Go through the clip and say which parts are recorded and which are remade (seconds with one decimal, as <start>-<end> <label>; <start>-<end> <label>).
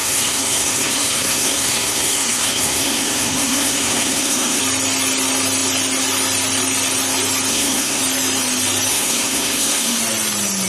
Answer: 0.0-4.6 remade; 4.6-7.5 recorded; 7.5-8.0 remade; 8.0-8.9 recorded; 8.9-10.0 remade; 10.0-10.7 recorded